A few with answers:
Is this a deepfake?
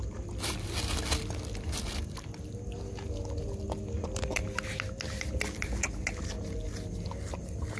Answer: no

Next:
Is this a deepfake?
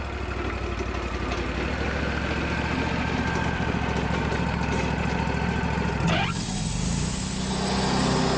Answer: no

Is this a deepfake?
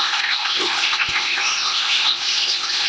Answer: yes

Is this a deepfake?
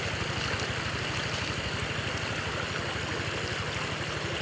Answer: no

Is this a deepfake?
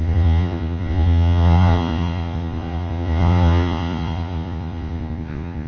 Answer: yes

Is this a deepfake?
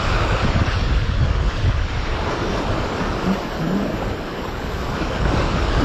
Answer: yes